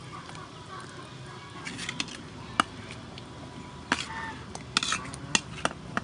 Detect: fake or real real